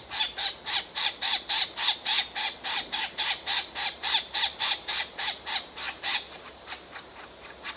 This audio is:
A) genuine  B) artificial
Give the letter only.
B